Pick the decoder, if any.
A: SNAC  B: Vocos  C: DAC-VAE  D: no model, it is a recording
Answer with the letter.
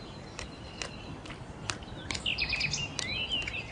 D